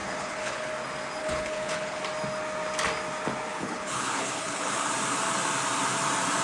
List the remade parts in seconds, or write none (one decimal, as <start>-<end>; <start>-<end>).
0.0-0.7; 1.2-2.0; 3.5-4.9